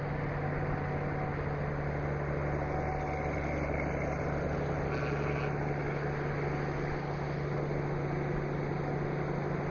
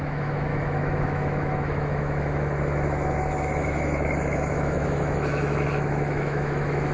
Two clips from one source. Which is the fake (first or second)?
second